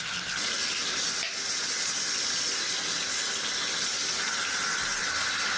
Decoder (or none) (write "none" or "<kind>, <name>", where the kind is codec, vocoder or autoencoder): none